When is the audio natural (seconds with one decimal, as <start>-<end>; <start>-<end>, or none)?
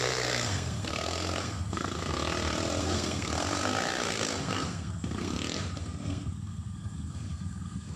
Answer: 2.1-2.8; 5.3-5.8